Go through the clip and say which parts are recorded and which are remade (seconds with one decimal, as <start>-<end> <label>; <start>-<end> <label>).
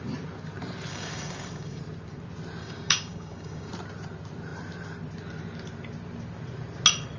0.0-0.9 recorded; 0.9-1.8 remade; 1.8-2.6 recorded; 2.6-3.7 remade; 3.7-7.2 recorded